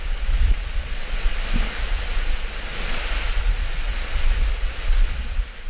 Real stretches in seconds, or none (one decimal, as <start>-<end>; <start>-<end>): 0.0-5.7